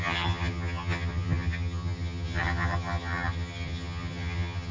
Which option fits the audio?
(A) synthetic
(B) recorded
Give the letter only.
A